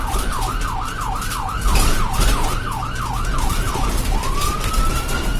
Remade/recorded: remade